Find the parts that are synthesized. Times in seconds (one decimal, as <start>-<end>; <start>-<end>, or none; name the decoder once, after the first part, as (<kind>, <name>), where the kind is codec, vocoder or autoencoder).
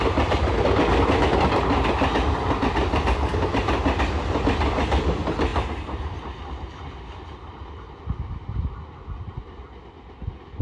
5.5-8.0 (vocoder, BigVGAN v2)